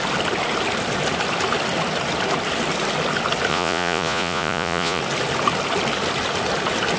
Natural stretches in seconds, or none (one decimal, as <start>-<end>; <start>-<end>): 0.0-3.5; 5.0-7.0